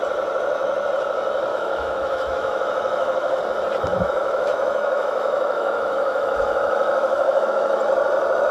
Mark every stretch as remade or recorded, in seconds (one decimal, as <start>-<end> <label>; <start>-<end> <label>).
0.0-1.5 recorded; 1.5-3.4 remade; 3.4-3.9 recorded; 3.9-7.8 remade; 7.8-8.5 recorded